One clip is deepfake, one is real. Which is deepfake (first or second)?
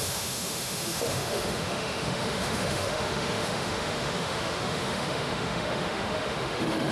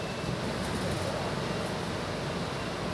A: first